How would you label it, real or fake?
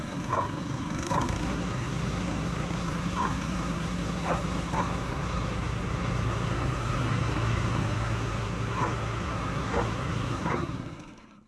fake